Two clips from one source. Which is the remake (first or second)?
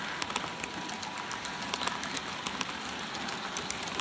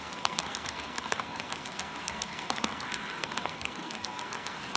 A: second